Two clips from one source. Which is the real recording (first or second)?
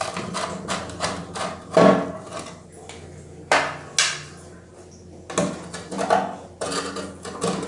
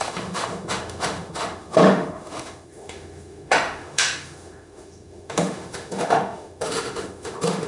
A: first